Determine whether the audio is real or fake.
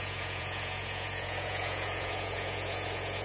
fake